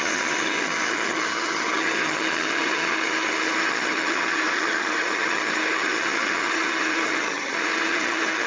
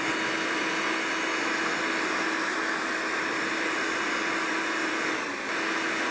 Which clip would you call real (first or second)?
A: second